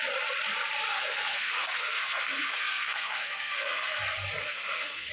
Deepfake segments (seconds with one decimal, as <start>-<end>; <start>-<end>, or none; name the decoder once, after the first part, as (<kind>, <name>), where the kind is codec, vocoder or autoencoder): 0.9-4.0 (codec, SNAC); 4.4-5.1

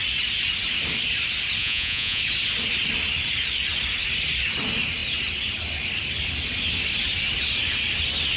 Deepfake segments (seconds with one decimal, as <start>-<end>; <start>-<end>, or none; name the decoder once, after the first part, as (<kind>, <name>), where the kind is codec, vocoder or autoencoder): 1.6-2.2 (vocoder, Vocos)

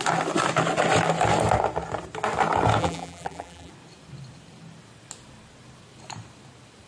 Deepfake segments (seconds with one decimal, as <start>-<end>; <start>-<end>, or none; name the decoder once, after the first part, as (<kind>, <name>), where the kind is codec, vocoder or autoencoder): 2.8-3.7 (vocoder, BigVGAN v2)

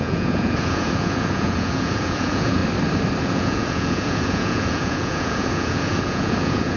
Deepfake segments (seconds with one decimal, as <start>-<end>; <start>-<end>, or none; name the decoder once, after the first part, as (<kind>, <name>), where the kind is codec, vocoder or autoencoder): 0.0-2.6 (vocoder, Vocos); 3.2-6.8

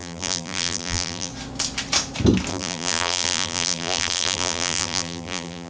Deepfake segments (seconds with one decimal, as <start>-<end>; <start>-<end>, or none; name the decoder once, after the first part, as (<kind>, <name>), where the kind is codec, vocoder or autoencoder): 0.0-1.3 (vocoder, BigVGAN v2); 2.5-5.7

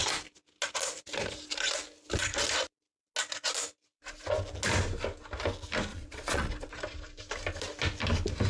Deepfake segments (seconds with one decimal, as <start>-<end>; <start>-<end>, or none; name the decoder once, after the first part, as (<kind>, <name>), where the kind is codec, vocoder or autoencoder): 5.9-6.7 (vocoder, Vocos)

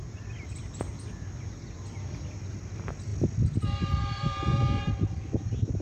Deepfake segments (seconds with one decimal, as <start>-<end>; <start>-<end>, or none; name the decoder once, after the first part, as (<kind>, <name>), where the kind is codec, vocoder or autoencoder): 0.0-5.8 (vocoder, BigVGAN v2)

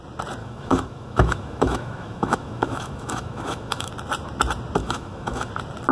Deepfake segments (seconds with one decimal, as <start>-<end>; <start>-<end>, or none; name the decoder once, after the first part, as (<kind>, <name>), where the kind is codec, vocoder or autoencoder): 0.4-3.9 (autoencoder, DAC-VAE); 4.8-5.5